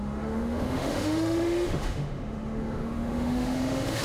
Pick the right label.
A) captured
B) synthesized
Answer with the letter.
B